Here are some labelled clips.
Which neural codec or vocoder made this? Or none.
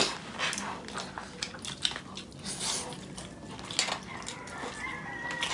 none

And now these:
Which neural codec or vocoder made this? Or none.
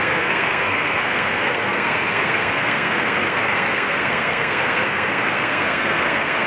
codec, SNAC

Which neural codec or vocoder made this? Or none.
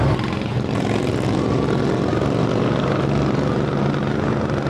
none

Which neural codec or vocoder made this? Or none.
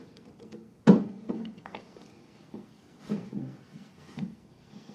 codec, SNAC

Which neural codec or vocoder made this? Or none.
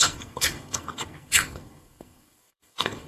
codec, SNAC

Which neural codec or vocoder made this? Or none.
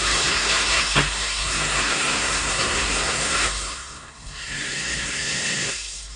codec, SNAC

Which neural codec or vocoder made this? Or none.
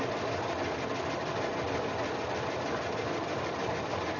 none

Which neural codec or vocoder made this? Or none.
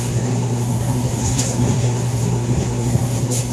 codec, SNAC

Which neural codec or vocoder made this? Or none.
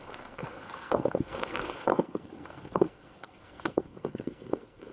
codec, SNAC